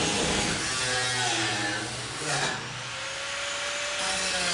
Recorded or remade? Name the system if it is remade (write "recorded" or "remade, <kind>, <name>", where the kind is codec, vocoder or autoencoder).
recorded